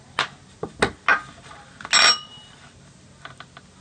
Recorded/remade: recorded